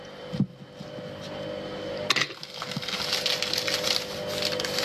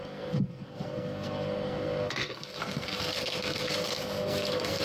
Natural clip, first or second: first